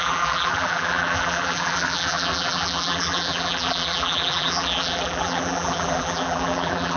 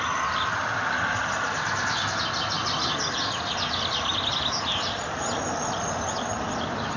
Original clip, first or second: second